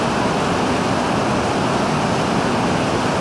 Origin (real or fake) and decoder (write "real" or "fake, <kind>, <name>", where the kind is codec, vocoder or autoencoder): real